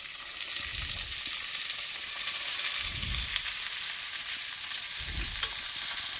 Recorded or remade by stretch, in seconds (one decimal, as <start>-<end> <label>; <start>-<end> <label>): 0.0-6.2 recorded